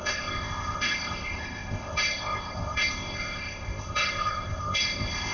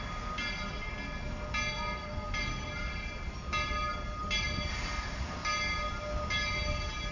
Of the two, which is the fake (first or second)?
first